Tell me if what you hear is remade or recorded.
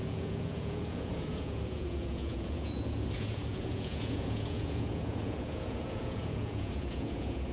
remade